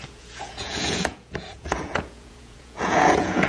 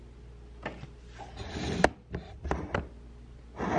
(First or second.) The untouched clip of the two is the second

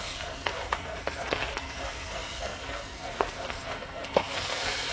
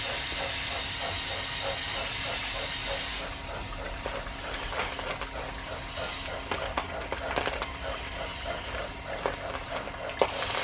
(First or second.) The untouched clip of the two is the second